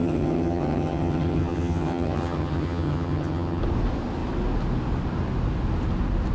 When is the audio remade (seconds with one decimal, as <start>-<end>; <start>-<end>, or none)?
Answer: 0.0-3.6